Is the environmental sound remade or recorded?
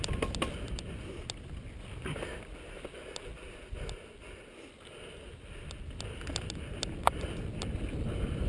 recorded